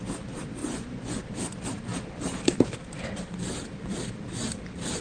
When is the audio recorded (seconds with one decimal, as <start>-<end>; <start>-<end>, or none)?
0.0-0.6; 1.2-5.0